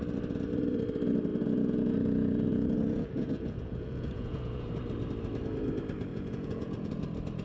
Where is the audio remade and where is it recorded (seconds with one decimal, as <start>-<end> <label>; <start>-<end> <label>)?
0.0-1.3 recorded; 1.3-4.7 remade; 4.7-6.1 recorded; 6.1-6.9 remade; 6.9-7.4 recorded